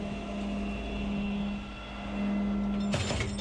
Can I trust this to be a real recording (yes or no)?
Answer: yes